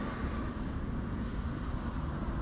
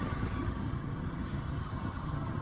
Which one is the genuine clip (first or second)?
first